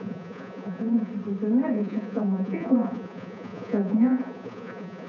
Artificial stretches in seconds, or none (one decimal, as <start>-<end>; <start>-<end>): 0.0-1.1; 1.7-5.1